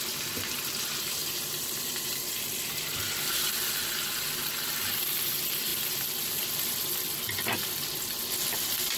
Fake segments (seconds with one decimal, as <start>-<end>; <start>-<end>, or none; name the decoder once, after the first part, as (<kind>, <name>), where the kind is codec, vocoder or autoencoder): 1.2-2.7 (vocoder, BigVGAN v2)